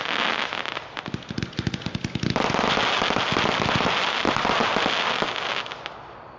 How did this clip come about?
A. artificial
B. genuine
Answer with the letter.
B